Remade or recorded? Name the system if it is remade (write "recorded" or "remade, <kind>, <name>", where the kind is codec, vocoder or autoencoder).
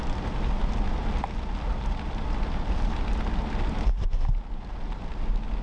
recorded